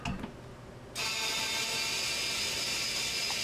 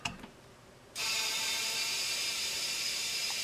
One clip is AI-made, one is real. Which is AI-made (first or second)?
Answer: second